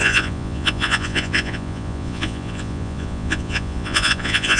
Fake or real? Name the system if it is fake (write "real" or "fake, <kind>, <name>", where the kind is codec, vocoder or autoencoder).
fake, vocoder, Vocos